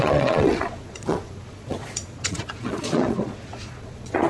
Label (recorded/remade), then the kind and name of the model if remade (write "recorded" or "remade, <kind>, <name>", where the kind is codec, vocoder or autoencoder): remade, vocoder, Vocos